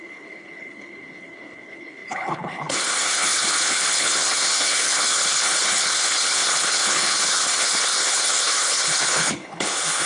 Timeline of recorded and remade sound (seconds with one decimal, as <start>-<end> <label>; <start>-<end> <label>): 0.0-10.1 remade